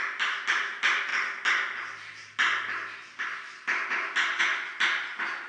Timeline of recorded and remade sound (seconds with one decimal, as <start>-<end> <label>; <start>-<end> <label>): 0.0-5.5 recorded